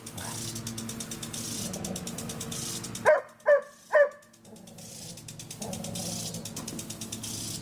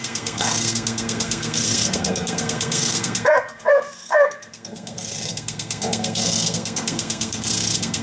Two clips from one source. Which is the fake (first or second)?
second